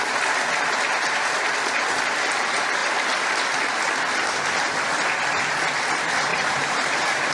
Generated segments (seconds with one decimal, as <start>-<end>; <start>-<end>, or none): 6.3-7.3